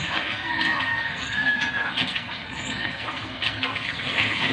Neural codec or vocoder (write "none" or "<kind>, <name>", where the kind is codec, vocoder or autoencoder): codec, SNAC